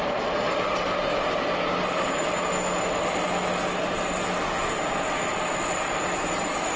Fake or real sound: real